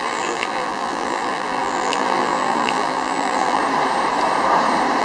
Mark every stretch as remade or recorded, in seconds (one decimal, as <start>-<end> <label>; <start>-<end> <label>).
0.0-3.6 remade; 3.6-5.0 recorded